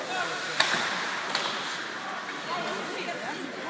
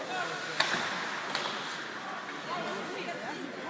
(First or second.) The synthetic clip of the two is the first